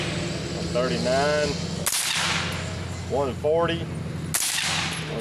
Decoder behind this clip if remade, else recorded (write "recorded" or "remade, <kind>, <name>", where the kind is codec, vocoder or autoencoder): recorded